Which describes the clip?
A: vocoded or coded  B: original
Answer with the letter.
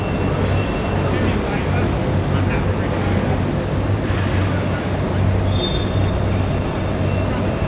B